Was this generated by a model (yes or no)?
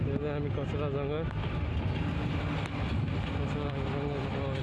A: no